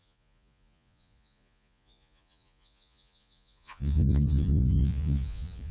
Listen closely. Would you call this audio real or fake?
fake